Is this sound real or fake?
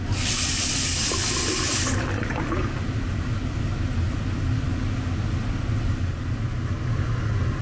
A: real